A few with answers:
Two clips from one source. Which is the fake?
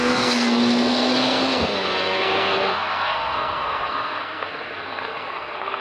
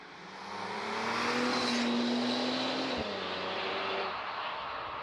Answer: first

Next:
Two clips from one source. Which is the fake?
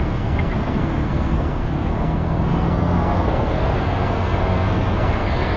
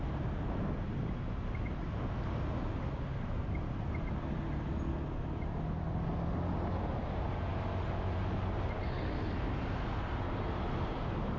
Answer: first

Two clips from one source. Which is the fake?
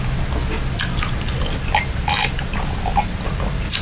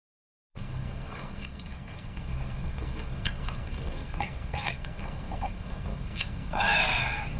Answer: second